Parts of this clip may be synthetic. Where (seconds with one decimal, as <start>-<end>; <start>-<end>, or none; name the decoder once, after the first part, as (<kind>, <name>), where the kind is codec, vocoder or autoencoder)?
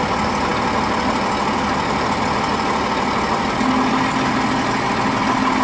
none